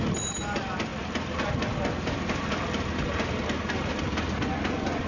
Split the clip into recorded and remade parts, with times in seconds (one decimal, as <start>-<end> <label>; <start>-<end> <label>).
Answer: 0.0-5.1 recorded